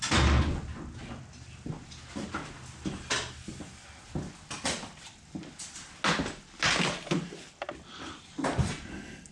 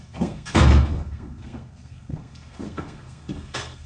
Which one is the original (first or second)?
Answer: first